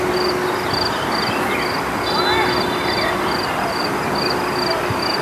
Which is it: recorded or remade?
recorded